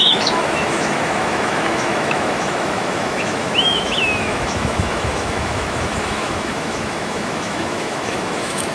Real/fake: fake